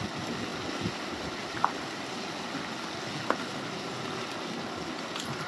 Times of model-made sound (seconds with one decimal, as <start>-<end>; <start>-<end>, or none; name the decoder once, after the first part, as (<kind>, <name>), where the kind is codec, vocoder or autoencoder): none